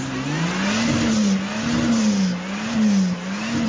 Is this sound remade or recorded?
recorded